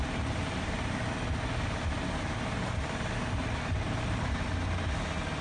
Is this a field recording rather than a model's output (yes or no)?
yes